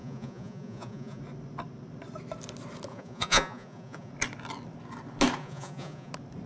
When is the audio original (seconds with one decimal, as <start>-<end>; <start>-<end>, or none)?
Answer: 1.2-2.9; 4.1-5.4; 6.1-6.5